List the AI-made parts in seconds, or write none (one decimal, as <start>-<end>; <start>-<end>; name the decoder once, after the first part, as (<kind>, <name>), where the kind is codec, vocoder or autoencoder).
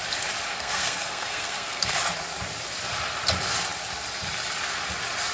0.5-2.0 (codec, SNAC)